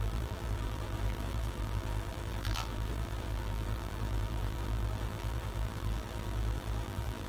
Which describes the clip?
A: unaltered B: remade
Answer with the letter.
B